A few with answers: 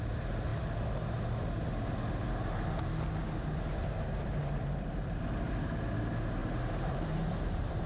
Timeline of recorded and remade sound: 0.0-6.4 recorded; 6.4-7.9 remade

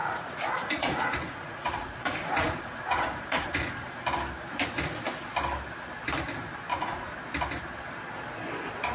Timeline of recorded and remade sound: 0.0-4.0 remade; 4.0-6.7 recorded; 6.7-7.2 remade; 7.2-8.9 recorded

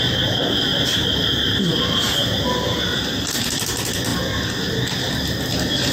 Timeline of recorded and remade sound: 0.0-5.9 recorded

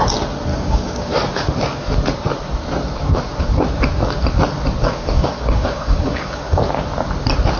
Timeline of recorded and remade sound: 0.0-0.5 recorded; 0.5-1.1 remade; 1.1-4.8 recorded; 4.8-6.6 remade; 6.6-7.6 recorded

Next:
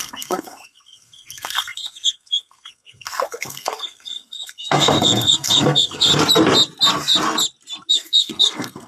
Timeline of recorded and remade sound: 0.0-6.1 remade; 6.1-7.9 recorded; 7.9-8.9 remade

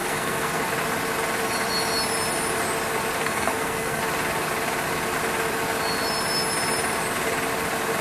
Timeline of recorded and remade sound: 0.0-0.6 remade; 0.6-3.2 recorded; 3.2-4.0 remade; 4.0-8.0 recorded

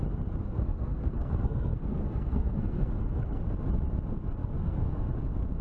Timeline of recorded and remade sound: 0.0-0.4 recorded; 0.4-3.4 remade; 3.4-4.4 recorded; 4.4-5.0 remade; 5.0-5.6 recorded

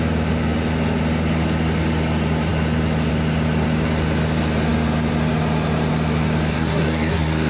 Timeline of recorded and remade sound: 0.0-6.5 recorded; 6.5-7.5 remade